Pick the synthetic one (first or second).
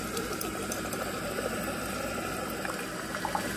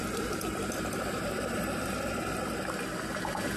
second